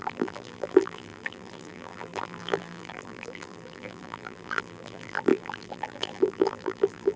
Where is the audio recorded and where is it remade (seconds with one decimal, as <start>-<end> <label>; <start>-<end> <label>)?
0.0-7.2 remade